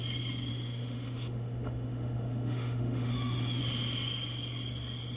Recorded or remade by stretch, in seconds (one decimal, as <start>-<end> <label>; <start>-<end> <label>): 0.0-0.5 recorded; 0.5-3.6 remade; 3.6-5.2 recorded